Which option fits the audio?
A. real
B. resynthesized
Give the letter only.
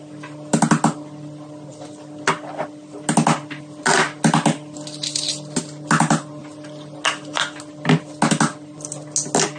A